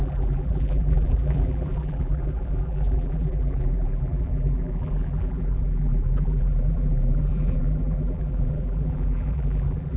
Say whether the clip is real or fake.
fake